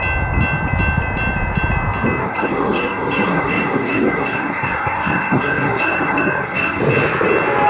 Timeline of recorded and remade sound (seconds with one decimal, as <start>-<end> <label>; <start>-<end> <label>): 0.0-2.2 recorded; 2.2-6.8 remade; 6.8-7.7 recorded